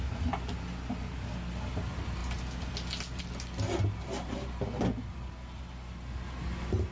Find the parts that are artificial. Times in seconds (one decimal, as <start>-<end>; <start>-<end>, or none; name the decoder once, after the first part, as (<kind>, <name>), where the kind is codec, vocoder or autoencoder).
none